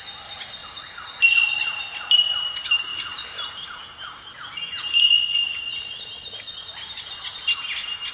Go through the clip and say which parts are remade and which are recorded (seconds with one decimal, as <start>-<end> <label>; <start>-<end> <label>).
0.0-0.6 recorded; 0.6-1.2 remade; 1.2-8.1 recorded